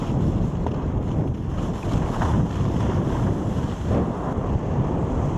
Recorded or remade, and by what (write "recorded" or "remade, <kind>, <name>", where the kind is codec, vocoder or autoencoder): recorded